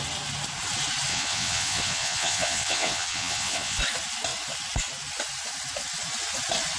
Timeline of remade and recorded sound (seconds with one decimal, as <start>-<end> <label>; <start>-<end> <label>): 0.0-1.1 recorded; 1.1-3.8 remade; 3.8-6.8 recorded